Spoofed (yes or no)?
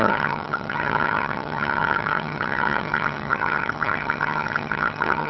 yes